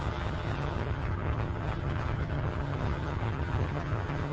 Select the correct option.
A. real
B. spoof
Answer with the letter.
B